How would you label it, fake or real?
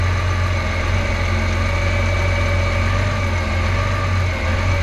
real